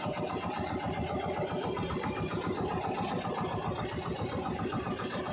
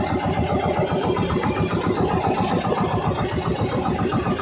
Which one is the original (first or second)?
first